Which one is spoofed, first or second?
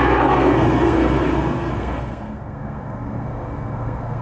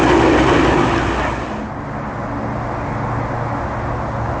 first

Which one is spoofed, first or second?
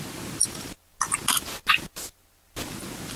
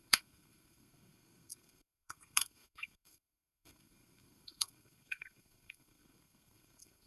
second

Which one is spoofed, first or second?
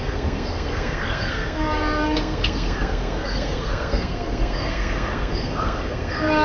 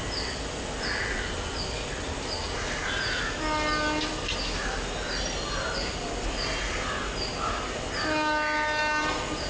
first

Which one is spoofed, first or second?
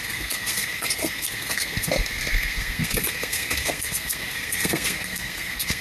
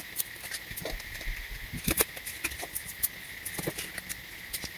first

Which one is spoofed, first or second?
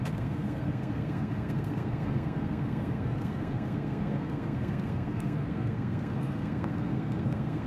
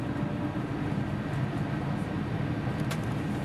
first